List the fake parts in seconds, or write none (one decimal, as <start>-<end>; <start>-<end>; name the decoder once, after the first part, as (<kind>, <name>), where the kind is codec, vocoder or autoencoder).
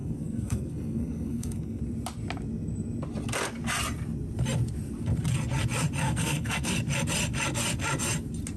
0.0-1.8 (codec, SNAC); 6.0-6.7